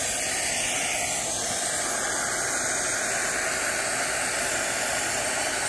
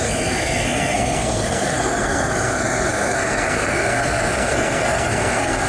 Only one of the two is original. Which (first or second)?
first